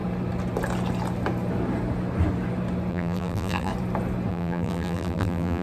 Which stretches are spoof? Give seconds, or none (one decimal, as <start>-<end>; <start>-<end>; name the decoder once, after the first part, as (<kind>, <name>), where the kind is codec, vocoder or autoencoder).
2.9-3.7 (vocoder, BigVGAN v2); 4.3-5.6